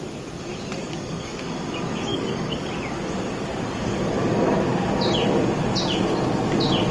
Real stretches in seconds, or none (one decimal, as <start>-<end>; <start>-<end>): 0.0-0.8; 1.4-2.1; 2.7-6.9